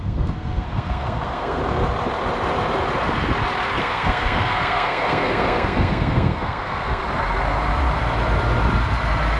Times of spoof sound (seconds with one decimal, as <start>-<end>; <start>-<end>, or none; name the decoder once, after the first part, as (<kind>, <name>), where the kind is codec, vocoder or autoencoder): 0.0-1.6 (codec, SNAC); 3.8-7.0